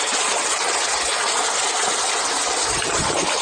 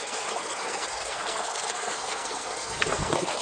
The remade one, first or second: second